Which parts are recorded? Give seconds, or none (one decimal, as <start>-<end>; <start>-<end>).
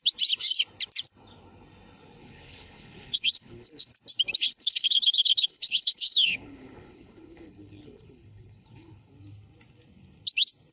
0.0-2.2; 3.9-4.4; 9.1-10.7